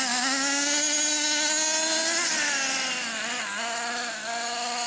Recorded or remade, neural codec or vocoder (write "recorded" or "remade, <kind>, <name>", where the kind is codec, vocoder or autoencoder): recorded